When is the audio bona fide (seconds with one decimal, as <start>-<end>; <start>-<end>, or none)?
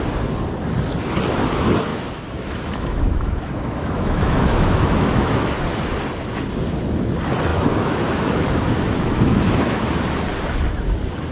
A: 0.0-1.9; 5.6-7.5; 10.0-11.3